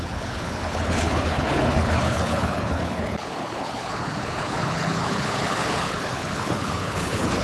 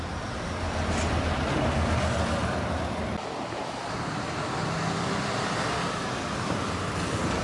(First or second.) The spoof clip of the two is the first